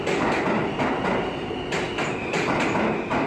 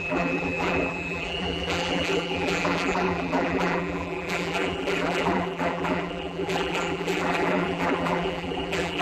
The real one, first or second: first